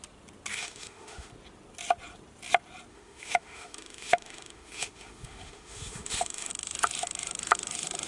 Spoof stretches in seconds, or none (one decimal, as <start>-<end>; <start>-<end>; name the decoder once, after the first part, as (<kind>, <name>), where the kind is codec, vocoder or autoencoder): 0.5-1.3 (autoencoder, DAC-VAE); 2.9-6.5